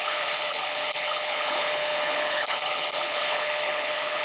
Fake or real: fake